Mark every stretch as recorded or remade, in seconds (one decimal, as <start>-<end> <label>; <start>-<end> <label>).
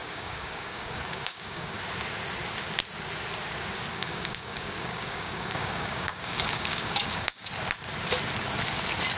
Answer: 0.0-1.8 remade; 1.8-3.9 recorded; 3.9-7.5 remade; 7.5-9.2 recorded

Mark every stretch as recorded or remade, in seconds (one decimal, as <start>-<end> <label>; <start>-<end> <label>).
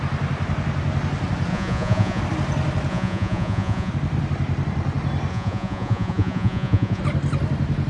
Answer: 0.0-1.5 recorded; 1.5-2.2 remade; 2.2-2.9 recorded; 2.9-3.9 remade; 3.9-5.3 recorded; 5.3-7.0 remade; 7.0-7.9 recorded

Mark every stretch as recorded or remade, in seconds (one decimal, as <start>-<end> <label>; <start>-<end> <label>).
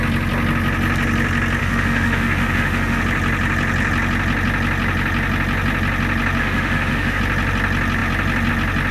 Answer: 0.0-1.6 recorded; 1.6-3.0 remade; 3.0-6.4 recorded; 6.4-7.2 remade; 7.2-8.9 recorded